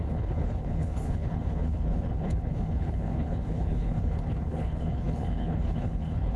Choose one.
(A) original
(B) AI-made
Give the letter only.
B